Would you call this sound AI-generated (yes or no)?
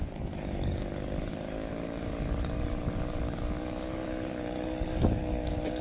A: yes